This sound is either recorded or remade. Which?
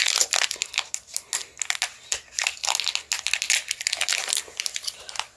recorded